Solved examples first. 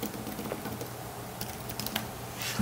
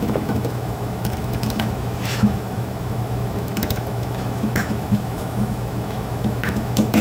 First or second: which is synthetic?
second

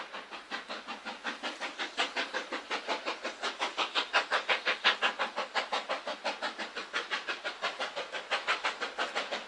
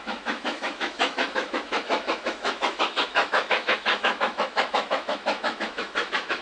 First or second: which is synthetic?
second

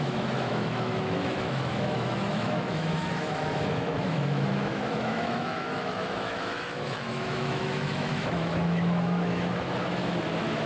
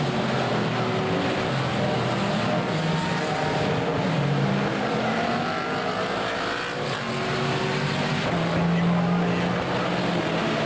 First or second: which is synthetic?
first